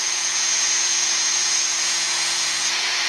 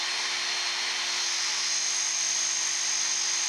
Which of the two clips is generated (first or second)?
first